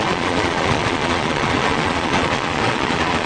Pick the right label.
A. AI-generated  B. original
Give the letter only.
A